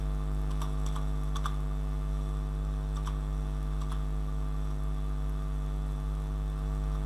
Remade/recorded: recorded